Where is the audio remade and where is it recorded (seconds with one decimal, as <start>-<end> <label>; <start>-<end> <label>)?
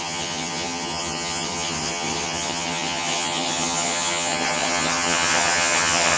0.0-6.2 remade